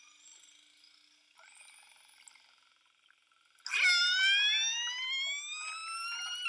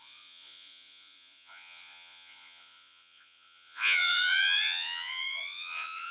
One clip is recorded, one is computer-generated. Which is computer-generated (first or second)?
second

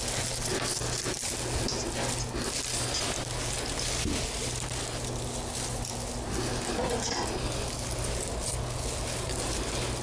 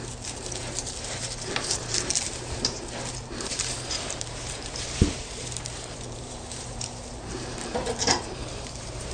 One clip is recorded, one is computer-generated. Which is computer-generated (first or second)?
second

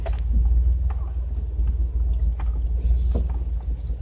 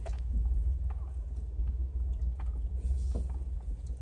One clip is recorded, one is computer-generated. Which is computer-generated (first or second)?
second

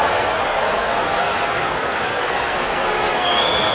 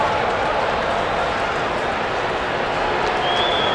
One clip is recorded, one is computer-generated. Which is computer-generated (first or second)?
first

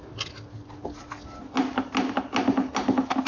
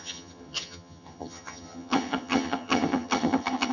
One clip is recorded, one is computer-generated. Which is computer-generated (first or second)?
second